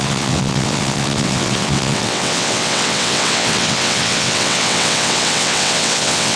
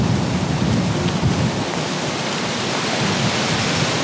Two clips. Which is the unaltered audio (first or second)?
second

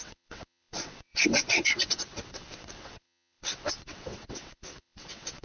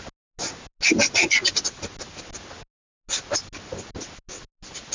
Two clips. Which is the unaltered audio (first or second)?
second